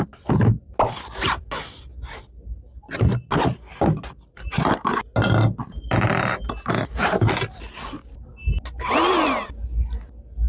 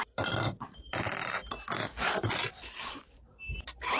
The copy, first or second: second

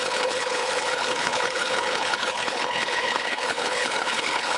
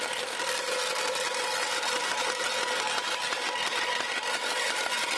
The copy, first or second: first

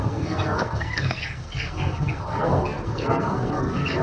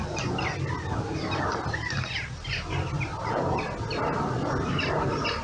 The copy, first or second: first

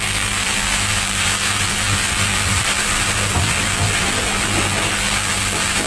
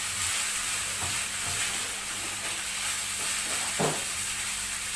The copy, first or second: first